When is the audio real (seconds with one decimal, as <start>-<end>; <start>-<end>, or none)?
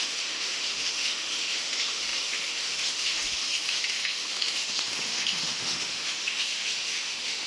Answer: none